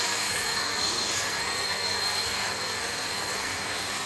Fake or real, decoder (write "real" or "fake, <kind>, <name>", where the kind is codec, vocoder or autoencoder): fake, codec, SNAC